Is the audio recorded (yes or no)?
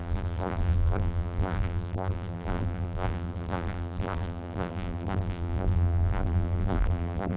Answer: no